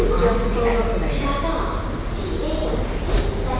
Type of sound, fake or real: real